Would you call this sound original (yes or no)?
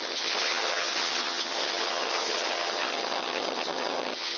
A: no